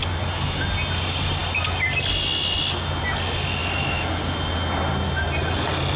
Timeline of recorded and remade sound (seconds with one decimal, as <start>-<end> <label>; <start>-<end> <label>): 0.0-6.0 recorded